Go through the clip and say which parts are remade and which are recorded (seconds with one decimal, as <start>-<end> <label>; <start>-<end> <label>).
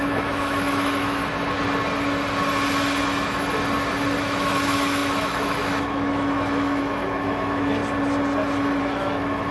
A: 0.0-1.2 remade; 1.2-4.2 recorded; 4.2-7.8 remade; 7.8-8.8 recorded; 8.8-9.5 remade